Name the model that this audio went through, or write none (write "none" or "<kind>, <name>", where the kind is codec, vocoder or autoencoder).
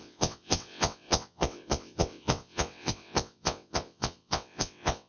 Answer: vocoder, WaveNeXt